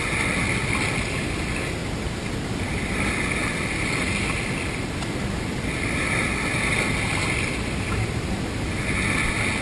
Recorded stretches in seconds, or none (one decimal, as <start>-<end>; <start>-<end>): 0.0-9.6

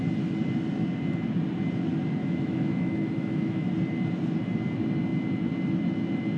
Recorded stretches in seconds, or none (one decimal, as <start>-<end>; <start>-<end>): 0.0-2.2; 3.7-6.4

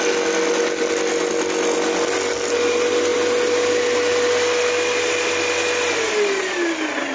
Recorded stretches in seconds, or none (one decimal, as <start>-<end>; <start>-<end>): 0.0-7.1

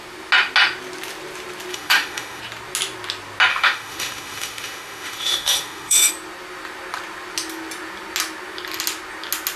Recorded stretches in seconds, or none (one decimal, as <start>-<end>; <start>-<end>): 0.0-1.7; 2.4-3.5; 6.1-9.6

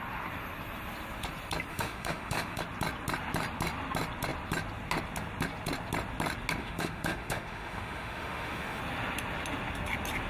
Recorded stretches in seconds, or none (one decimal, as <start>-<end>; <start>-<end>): 0.0-1.7; 2.6-6.6; 8.8-10.3

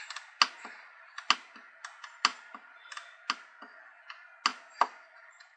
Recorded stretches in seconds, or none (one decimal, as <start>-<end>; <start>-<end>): 0.0-5.6

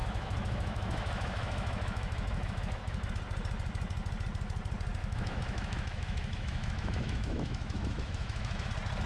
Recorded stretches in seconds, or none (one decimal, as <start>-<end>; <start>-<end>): 3.1-5.0; 8.7-9.1